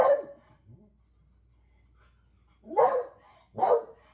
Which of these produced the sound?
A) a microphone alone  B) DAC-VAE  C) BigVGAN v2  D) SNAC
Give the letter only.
A